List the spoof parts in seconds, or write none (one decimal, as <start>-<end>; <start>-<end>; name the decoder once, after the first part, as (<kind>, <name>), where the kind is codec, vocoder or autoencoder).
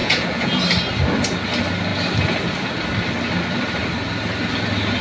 0.0-0.6 (vocoder, Vocos)